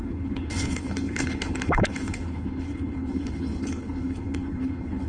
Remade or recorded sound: remade